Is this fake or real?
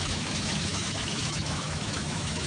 fake